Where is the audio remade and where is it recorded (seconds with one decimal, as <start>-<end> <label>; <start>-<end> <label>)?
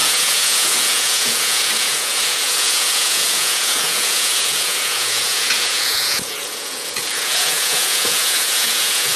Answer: 0.0-9.2 remade